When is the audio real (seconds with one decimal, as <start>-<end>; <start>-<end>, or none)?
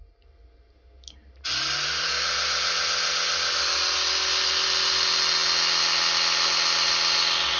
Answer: 0.0-7.6